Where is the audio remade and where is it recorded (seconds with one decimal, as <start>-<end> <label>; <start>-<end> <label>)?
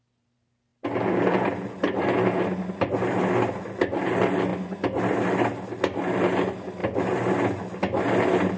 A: 0.0-8.6 recorded